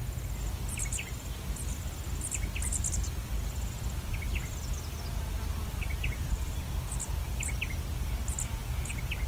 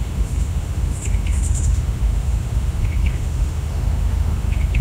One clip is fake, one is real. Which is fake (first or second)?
second